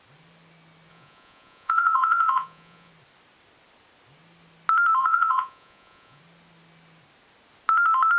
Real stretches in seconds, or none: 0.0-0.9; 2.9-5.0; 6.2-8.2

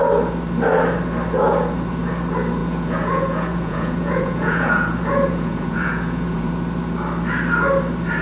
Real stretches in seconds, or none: 0.0-2.6; 6.5-8.2

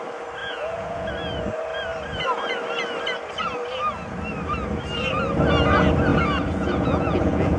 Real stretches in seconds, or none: 0.0-0.4; 1.1-6.1

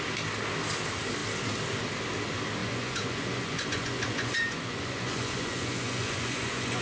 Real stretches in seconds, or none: 0.0-2.6

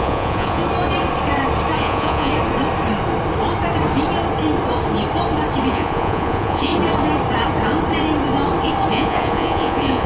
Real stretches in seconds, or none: 0.6-1.8; 2.3-5.7; 6.7-8.9